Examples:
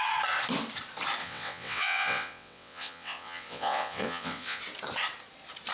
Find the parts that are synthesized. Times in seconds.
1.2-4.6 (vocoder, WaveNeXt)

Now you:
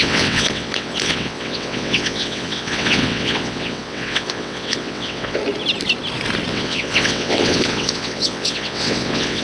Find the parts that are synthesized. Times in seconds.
0.0-5.4 (vocoder, WaveNeXt); 6.5-9.4

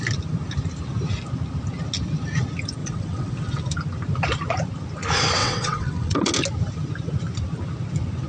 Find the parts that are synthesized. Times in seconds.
2.8-3.7 (vocoder, WaveNeXt); 5.4-6.3

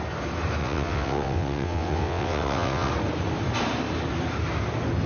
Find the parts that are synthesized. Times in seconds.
0.6-2.9 (vocoder, WaveNeXt)

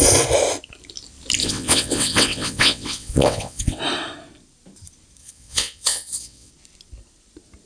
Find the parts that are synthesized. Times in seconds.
1.4-3.8 (vocoder, WaveNeXt); 5.2-6.5

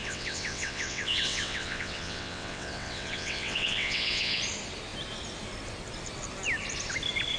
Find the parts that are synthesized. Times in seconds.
0.0-4.4 (vocoder, WaveNeXt)

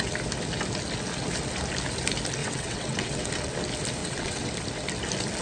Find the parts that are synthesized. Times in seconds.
2.4-3.3 (vocoder, WaveNeXt); 4.0-4.5